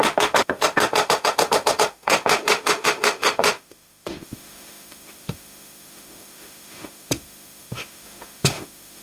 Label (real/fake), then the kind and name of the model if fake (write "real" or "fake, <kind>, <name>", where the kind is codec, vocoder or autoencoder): fake, autoencoder, DAC-VAE